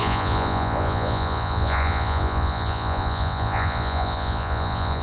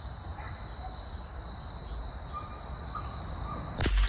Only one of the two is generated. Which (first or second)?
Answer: first